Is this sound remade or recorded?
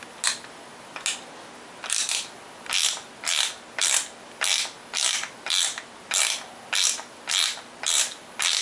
recorded